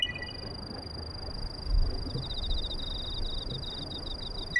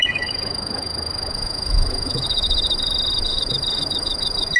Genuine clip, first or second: first